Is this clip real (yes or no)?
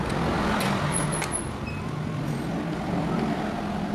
yes